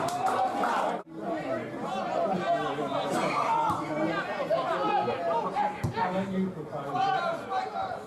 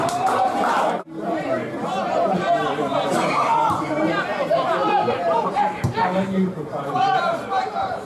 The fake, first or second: second